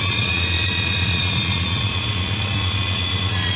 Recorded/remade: remade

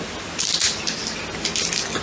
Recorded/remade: recorded